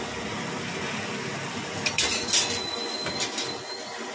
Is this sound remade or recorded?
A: recorded